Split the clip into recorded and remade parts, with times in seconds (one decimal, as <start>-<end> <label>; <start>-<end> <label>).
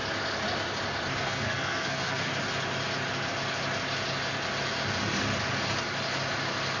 0.0-1.2 recorded; 1.2-2.3 remade; 2.3-6.8 recorded